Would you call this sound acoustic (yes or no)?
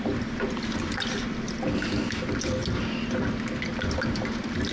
yes